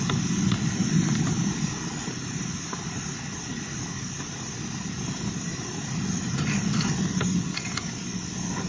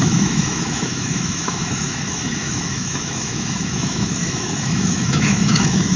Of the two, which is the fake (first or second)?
second